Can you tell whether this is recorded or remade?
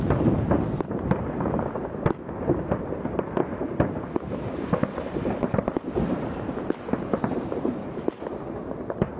remade